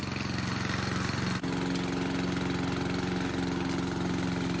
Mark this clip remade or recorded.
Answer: recorded